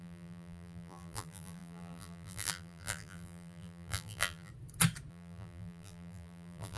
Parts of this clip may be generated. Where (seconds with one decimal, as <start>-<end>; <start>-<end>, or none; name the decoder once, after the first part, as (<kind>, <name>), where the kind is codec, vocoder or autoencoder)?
0.0-4.5 (vocoder, BigVGAN v2); 5.1-6.8